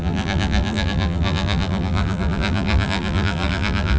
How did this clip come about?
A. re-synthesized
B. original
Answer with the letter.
A